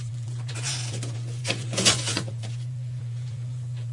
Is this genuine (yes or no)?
no